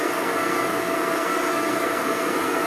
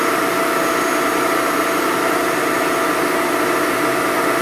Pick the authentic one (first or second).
second